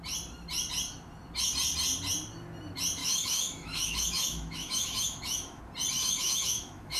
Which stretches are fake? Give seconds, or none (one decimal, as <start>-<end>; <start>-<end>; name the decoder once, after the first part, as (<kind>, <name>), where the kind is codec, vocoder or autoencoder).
3.0-5.6 (autoencoder, DAC-VAE); 6.0-7.0